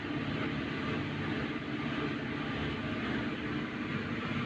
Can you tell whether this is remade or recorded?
recorded